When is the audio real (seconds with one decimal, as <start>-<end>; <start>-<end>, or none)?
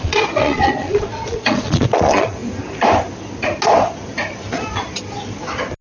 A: 2.4-5.8